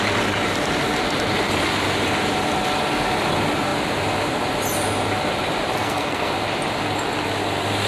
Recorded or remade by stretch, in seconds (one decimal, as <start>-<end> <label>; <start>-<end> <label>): 0.0-5.8 recorded; 5.8-6.3 remade; 6.3-7.9 recorded